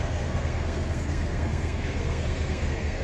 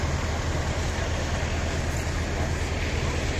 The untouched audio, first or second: second